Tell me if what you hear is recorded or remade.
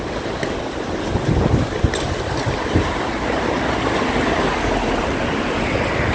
recorded